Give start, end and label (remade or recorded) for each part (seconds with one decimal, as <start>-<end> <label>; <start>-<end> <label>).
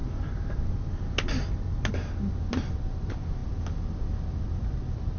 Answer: 0.0-5.2 recorded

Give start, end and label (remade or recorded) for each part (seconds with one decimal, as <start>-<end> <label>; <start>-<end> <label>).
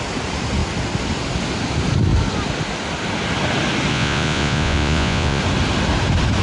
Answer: 0.0-3.9 recorded; 3.9-5.4 remade; 5.4-6.4 recorded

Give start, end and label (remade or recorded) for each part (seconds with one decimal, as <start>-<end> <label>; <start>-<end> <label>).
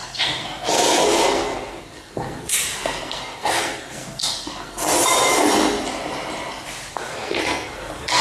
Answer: 0.0-4.9 remade; 4.9-6.9 recorded; 6.9-8.2 remade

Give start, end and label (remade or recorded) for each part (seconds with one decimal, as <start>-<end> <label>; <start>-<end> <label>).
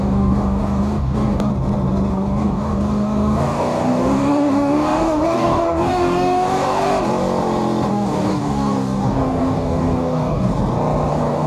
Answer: 0.0-1.5 remade; 1.5-2.1 recorded; 2.1-6.9 remade; 6.9-7.9 recorded; 7.9-10.5 remade; 10.5-11.1 recorded; 11.1-11.5 remade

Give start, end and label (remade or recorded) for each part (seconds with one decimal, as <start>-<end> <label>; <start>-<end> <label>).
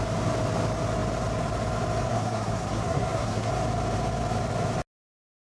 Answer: 0.0-2.1 recorded; 2.1-3.5 remade; 3.5-5.4 recorded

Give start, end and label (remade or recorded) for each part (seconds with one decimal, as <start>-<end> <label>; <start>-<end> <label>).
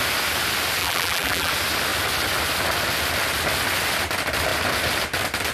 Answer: 0.0-0.8 recorded; 0.8-1.5 remade; 1.5-5.5 recorded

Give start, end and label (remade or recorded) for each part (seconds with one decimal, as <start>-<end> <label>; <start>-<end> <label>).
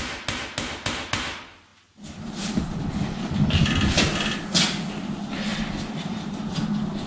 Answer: 0.0-1.7 recorded; 1.7-2.9 remade; 2.9-5.5 recorded; 5.5-6.5 remade; 6.5-7.1 recorded